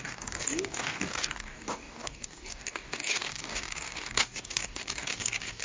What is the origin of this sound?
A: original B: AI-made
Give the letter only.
B